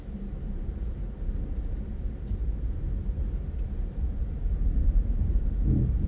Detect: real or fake fake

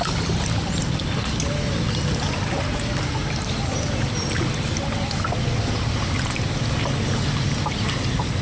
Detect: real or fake real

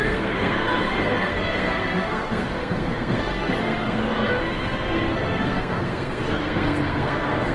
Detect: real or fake fake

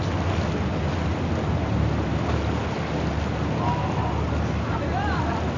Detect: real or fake real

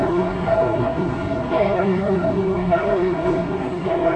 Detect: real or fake fake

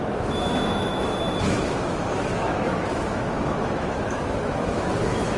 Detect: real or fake fake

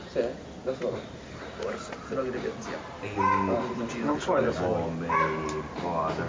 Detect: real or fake real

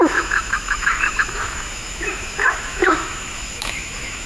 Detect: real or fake fake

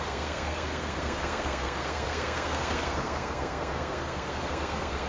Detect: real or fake fake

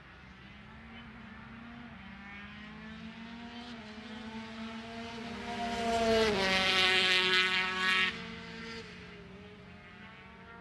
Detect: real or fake real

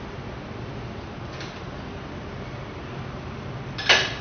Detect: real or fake real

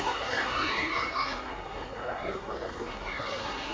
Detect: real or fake fake